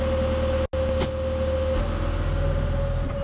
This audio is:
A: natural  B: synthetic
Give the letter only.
A